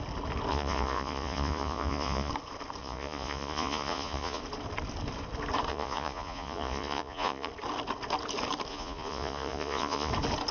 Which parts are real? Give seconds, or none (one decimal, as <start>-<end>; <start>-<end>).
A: 0.0-0.5; 2.3-2.8; 4.4-5.7; 7.5-8.7; 10.1-10.5